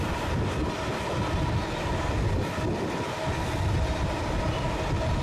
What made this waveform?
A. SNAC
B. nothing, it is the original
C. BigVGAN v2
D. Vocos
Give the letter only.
B